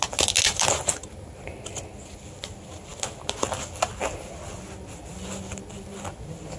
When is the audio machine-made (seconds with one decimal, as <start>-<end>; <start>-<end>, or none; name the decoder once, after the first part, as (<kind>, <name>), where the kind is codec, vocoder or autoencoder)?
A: none